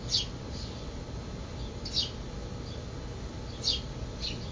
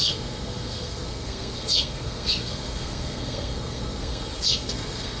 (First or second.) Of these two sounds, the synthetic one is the second